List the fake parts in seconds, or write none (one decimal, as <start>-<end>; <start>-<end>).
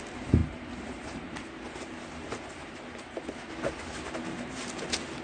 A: none